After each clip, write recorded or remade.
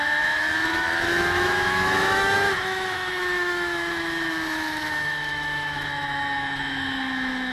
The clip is remade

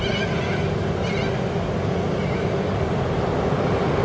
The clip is recorded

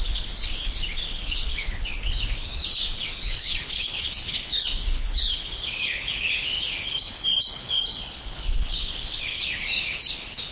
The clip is remade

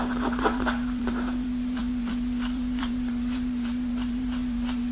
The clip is remade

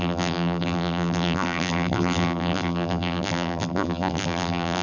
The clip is remade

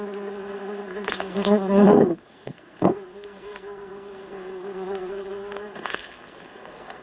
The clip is remade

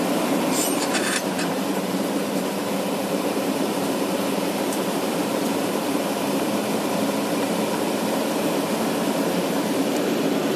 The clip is remade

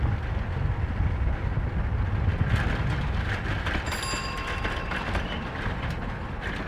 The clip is recorded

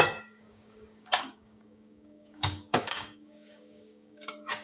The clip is remade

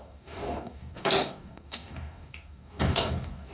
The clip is remade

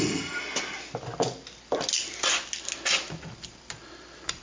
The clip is recorded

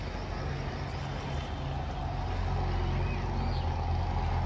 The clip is recorded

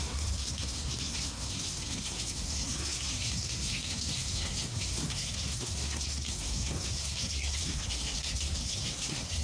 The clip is remade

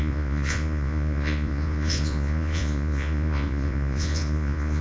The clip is remade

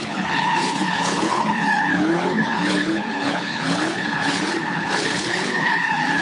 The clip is remade